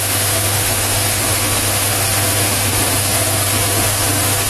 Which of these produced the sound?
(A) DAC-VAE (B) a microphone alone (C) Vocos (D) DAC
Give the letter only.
A